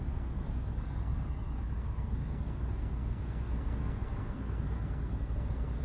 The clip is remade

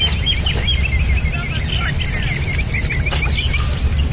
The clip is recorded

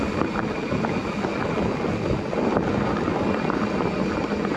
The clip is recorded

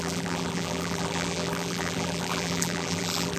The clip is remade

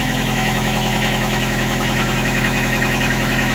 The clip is remade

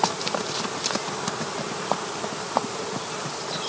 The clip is recorded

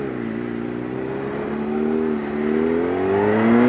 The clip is recorded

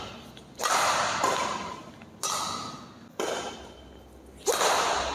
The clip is recorded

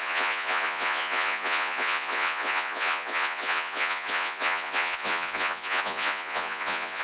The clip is remade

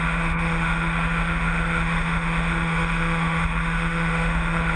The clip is remade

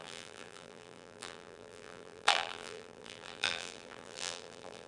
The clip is remade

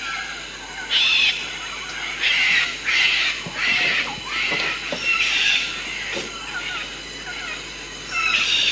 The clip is recorded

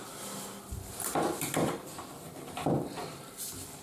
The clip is recorded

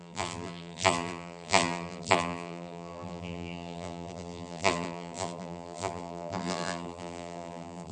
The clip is remade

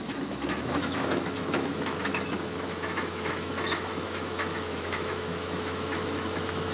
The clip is remade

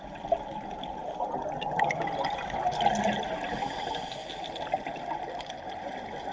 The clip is recorded